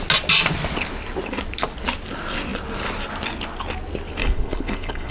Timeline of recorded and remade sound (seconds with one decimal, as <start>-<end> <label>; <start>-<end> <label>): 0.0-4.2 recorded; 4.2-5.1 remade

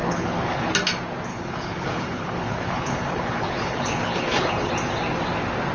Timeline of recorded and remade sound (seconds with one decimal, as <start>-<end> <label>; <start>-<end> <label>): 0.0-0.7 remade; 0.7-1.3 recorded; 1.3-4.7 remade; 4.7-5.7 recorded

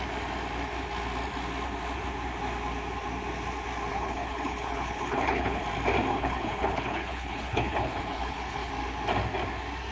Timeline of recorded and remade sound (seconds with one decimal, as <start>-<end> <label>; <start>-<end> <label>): 0.0-3.9 recorded; 3.9-5.6 remade; 5.6-6.1 recorded; 6.1-8.7 remade; 8.7-9.9 recorded